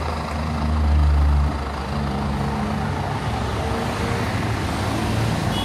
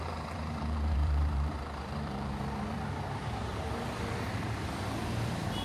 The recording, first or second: first